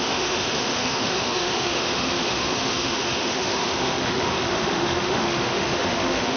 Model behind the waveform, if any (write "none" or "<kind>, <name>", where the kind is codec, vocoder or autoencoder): autoencoder, DAC-VAE